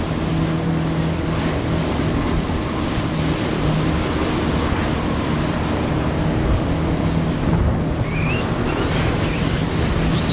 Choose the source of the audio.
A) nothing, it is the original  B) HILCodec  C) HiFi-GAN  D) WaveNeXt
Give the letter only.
A